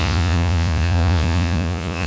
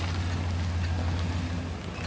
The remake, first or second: first